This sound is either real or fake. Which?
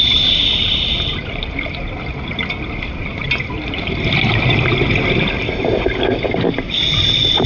real